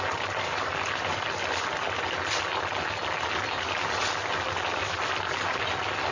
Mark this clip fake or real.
real